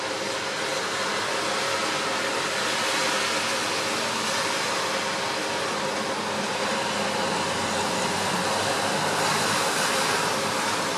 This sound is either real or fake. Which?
real